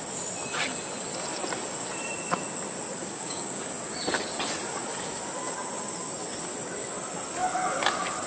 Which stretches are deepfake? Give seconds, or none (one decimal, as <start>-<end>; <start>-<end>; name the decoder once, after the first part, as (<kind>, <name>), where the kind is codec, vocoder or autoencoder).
3.0-3.6 (codec, DAC)